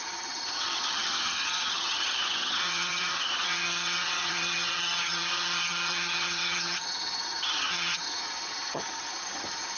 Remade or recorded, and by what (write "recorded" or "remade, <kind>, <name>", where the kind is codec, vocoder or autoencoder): remade, vocoder, HiFi-GAN